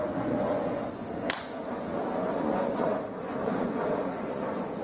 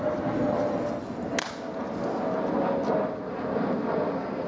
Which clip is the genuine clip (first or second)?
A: second